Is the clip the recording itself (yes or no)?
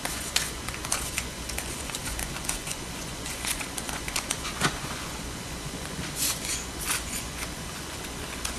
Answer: no